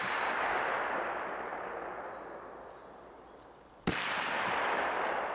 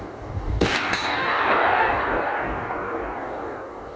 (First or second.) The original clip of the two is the first